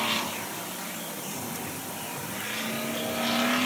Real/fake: real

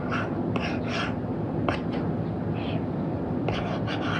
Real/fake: real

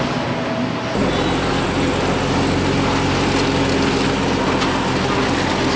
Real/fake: real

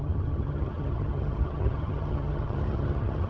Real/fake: fake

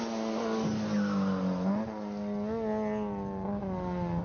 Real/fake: real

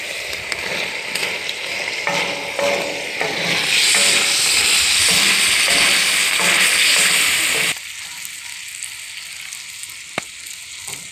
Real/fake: real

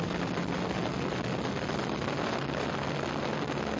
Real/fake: real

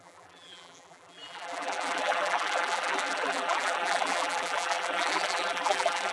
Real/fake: fake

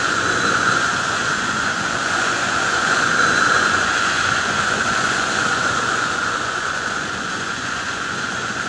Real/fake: fake